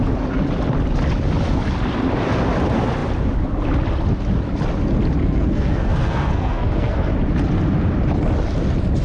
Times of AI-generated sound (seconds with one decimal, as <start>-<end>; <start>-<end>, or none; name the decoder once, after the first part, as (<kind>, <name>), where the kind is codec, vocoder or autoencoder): 5.2-7.1 (codec, SNAC)

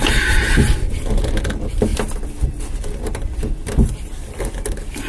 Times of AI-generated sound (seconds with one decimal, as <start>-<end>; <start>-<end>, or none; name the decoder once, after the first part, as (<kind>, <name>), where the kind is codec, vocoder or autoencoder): 0.0-1.4 (vocoder, BigVGAN v2)

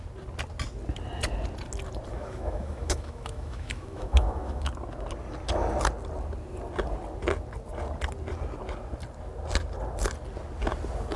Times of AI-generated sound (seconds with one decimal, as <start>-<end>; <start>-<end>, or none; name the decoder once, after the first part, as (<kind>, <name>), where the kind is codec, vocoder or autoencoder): 2.1-4.7 (autoencoder, DAC-VAE)